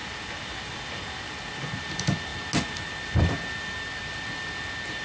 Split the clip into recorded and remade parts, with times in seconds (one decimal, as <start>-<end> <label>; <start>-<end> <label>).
0.0-5.0 recorded